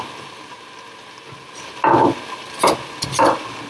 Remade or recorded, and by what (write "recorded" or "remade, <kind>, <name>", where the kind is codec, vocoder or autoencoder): recorded